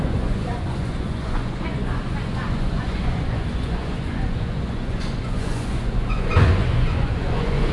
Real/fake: fake